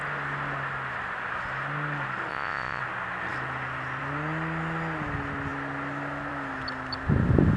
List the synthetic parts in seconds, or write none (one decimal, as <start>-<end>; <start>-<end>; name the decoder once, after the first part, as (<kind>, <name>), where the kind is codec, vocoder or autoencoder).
2.3-2.8 (vocoder, Vocos)